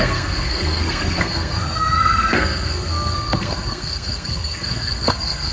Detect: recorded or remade remade